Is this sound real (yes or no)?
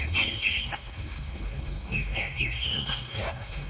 no